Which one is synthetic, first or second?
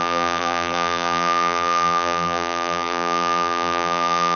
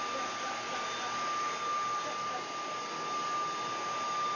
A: first